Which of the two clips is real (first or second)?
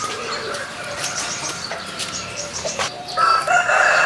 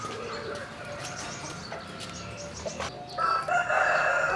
second